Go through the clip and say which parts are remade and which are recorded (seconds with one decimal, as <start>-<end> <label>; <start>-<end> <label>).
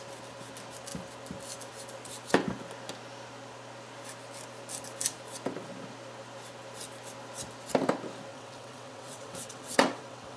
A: 0.0-8.3 recorded; 8.3-10.4 remade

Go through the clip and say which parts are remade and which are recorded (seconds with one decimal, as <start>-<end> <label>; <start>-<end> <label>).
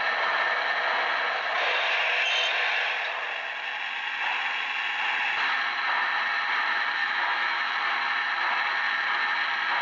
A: 0.0-7.0 recorded; 7.0-7.7 remade; 7.7-9.8 recorded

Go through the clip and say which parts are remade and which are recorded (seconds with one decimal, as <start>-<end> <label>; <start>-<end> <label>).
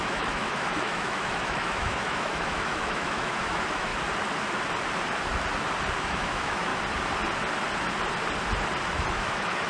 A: 0.0-3.9 remade; 3.9-6.0 recorded; 6.0-6.7 remade; 6.7-9.1 recorded; 9.1-9.7 remade